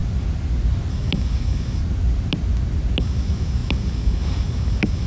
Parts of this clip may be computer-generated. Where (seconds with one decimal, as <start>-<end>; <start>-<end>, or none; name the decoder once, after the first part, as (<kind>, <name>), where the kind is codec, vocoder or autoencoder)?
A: 0.9-1.8 (codec, DAC); 3.0-5.1